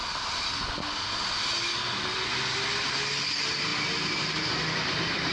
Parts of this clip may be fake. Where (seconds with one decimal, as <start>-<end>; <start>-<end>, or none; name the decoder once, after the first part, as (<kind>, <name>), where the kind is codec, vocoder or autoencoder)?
none